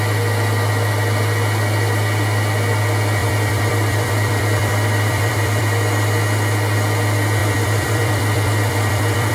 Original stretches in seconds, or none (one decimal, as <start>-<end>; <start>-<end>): 0.0-3.2; 5.6-7.4